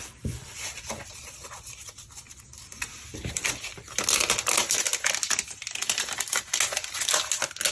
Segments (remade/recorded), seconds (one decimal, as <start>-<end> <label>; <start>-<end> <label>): 0.0-7.7 recorded